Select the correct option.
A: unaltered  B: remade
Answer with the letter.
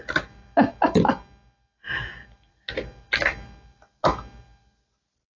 A